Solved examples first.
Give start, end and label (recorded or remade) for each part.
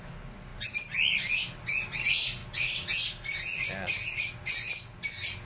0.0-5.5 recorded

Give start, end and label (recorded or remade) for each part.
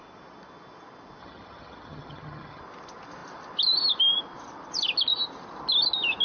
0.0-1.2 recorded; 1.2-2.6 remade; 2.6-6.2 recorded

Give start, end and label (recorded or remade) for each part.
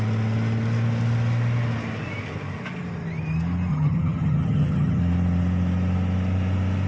0.0-3.7 recorded; 3.7-5.0 remade; 5.0-6.9 recorded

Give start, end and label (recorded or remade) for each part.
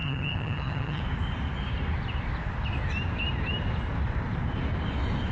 0.0-1.0 remade; 1.0-5.3 recorded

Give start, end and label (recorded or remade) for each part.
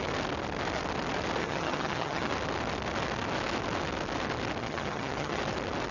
0.0-1.4 recorded; 1.4-2.3 remade; 2.3-4.6 recorded; 4.6-5.4 remade; 5.4-5.9 recorded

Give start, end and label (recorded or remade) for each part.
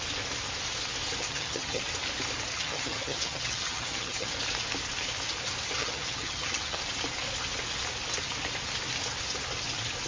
0.0-1.2 recorded; 1.2-1.8 remade; 1.8-2.5 recorded; 2.5-4.3 remade; 4.3-5.8 recorded; 5.8-6.8 remade; 6.8-10.1 recorded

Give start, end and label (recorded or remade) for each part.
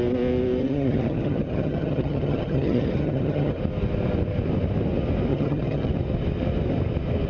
0.0-0.6 recorded; 0.6-3.6 remade; 3.6-5.3 recorded; 5.3-5.9 remade; 5.9-7.3 recorded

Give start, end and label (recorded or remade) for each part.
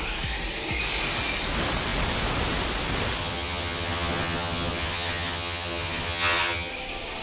0.0-3.2 recorded; 3.2-6.7 remade; 6.7-7.2 recorded